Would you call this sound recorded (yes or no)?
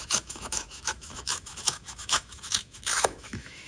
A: no